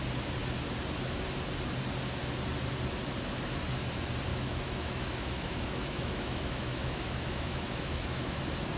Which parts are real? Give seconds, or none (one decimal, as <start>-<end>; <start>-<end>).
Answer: 0.0-4.3; 8.4-8.8